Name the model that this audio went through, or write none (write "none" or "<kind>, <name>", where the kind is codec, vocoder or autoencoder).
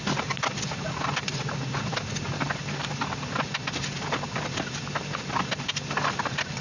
none